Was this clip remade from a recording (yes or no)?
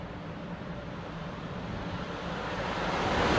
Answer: no